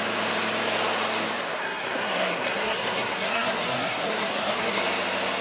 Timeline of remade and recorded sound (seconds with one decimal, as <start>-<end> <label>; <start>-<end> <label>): 0.0-1.6 recorded; 1.6-4.8 remade; 4.8-5.4 recorded

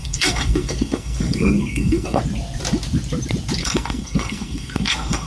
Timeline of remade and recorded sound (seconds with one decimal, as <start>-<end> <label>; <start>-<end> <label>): 0.0-2.2 remade; 2.2-3.6 recorded; 3.6-5.3 remade

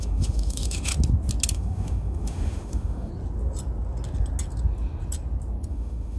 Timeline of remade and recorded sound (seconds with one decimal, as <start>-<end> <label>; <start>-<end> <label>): 0.0-0.9 remade; 0.9-1.5 recorded; 1.5-3.1 remade; 3.1-5.7 recorded; 5.7-6.2 remade

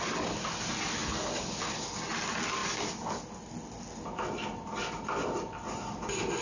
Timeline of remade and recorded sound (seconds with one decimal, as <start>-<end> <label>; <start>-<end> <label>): 0.0-6.4 recorded

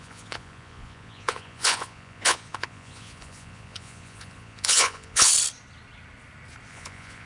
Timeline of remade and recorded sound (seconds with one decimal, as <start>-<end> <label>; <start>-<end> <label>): 0.0-5.3 remade; 5.3-6.7 recorded; 6.7-7.3 remade

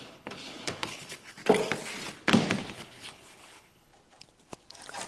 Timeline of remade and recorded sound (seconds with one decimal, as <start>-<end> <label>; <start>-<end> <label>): 0.0-1.4 remade; 1.4-2.7 recorded; 2.7-3.9 remade; 3.9-5.1 recorded

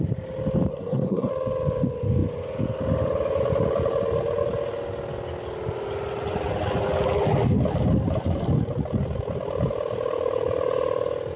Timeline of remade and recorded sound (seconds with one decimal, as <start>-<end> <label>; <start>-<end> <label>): 0.0-0.7 recorded; 0.7-1.3 remade; 1.3-11.4 recorded